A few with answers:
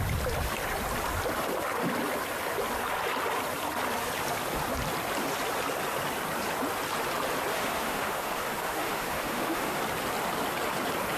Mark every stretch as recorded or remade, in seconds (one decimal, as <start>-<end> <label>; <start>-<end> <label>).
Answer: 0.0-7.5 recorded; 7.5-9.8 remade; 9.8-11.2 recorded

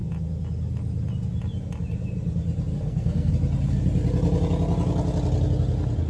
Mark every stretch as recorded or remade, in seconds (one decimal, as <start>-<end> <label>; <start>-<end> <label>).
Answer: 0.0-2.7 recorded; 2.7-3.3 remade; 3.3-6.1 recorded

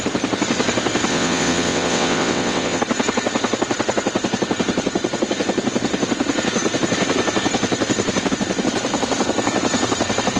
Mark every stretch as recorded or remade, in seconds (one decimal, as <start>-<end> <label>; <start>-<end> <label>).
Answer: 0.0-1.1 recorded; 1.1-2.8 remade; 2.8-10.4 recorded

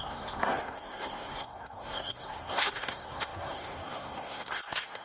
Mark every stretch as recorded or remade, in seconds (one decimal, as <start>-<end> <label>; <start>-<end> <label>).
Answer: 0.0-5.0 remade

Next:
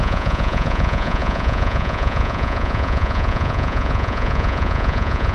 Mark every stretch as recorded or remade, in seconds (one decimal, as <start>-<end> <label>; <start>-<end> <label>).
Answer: 0.0-5.3 remade